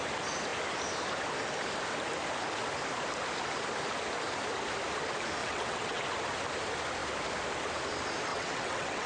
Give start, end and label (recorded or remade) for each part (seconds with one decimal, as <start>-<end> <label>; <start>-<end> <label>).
0.0-5.4 recorded; 5.4-6.0 remade; 6.0-8.3 recorded; 8.3-9.1 remade